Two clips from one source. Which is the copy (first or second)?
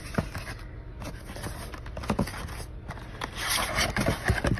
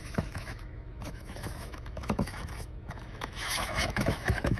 second